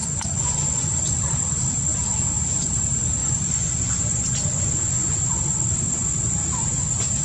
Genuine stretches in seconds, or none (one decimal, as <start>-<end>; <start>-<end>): 1.0-3.2; 5.1-7.2